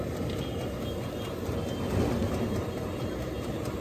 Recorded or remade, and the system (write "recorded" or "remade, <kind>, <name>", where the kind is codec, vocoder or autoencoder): recorded